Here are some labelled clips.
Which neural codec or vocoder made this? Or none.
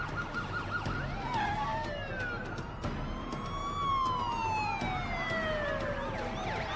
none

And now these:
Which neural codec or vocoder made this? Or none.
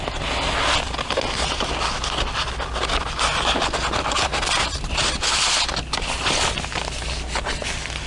none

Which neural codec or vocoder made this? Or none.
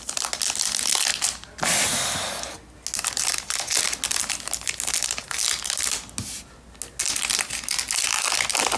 none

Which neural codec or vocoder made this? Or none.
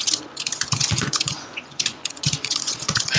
vocoder, Vocos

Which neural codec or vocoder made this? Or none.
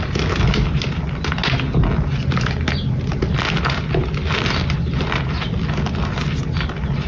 none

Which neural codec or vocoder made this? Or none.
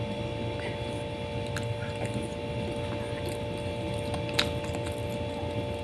none